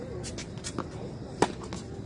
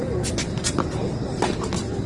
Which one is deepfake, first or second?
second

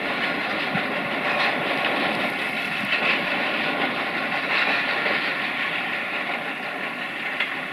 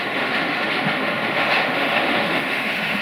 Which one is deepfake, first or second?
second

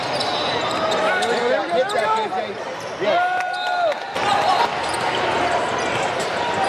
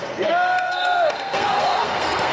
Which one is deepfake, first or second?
second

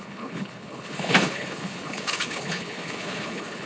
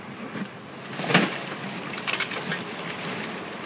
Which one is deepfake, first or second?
first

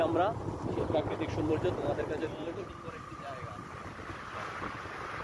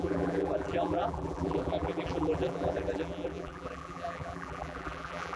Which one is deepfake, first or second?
second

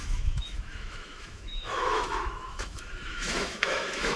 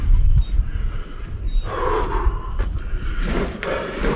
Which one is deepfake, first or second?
first